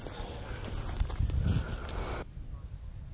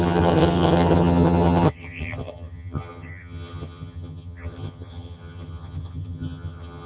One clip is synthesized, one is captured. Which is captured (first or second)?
first